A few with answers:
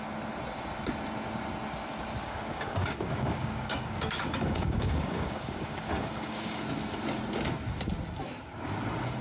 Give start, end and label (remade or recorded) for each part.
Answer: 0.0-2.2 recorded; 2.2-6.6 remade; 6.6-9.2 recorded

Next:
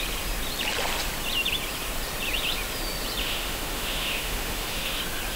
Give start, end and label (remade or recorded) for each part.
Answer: 0.0-3.2 recorded; 3.2-5.0 remade; 5.0-5.4 recorded

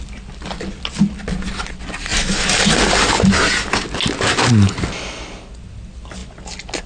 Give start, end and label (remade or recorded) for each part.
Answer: 0.0-6.9 recorded